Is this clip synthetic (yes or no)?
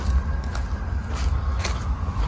no